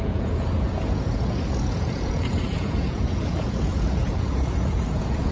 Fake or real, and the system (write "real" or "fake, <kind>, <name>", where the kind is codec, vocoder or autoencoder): fake, vocoder, Vocos